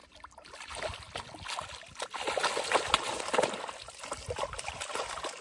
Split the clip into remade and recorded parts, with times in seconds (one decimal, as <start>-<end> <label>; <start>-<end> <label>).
0.0-5.4 recorded